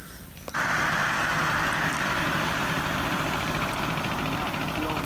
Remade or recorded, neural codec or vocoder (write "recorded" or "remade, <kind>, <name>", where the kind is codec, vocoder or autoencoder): remade, vocoder, BigVGAN v2